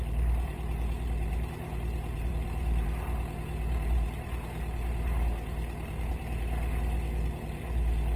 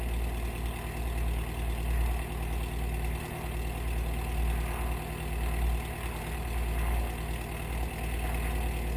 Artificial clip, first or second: first